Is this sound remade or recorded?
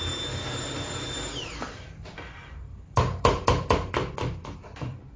remade